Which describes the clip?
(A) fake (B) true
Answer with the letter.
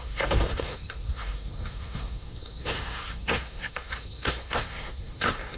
A